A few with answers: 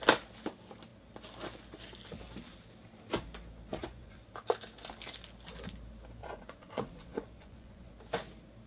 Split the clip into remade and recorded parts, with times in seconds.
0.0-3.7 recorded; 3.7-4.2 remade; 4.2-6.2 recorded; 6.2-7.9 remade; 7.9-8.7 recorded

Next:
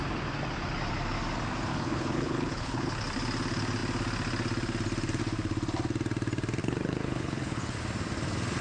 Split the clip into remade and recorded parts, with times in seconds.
0.0-1.7 recorded; 1.7-2.9 remade; 2.9-6.6 recorded; 6.6-7.8 remade; 7.8-8.6 recorded

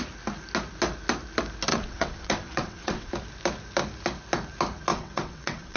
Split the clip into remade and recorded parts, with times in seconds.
0.0-1.7 recorded; 1.7-3.1 remade; 3.1-4.9 recorded; 4.9-5.8 remade

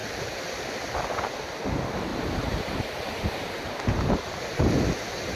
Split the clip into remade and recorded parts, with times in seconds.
0.0-2.1 recorded; 2.1-5.4 remade

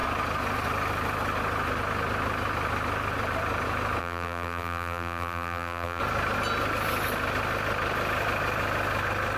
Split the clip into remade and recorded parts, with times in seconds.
0.0-4.0 recorded; 4.0-6.0 remade; 6.0-9.4 recorded

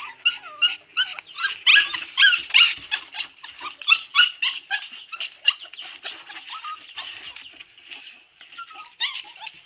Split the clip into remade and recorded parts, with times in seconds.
0.0-1.7 recorded; 1.7-7.0 remade; 7.0-8.3 recorded; 8.3-9.7 remade